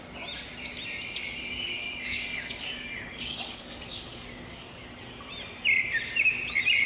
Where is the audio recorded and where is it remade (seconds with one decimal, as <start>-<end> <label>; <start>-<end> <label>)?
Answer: 0.0-1.8 recorded; 1.8-4.8 remade; 4.8-6.9 recorded